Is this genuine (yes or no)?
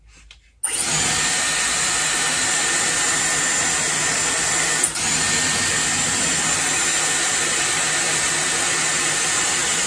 yes